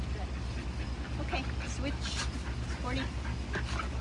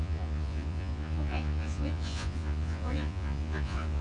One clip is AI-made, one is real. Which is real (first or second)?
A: first